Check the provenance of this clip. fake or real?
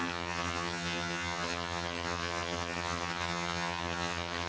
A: fake